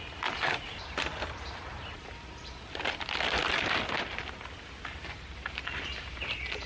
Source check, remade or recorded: recorded